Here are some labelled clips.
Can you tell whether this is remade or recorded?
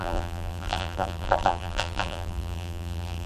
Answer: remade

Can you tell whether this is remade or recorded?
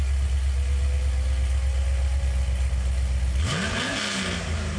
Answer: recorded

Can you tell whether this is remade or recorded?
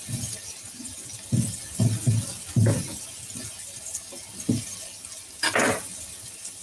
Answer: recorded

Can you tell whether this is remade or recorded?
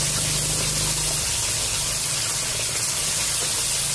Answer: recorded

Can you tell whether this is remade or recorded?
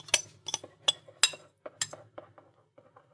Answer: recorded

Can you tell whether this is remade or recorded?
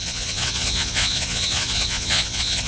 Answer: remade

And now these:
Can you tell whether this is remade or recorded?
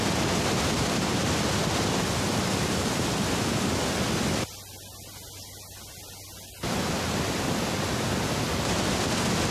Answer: recorded